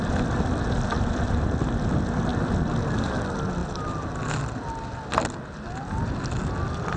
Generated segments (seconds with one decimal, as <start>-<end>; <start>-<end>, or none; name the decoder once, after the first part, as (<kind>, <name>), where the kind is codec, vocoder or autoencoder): none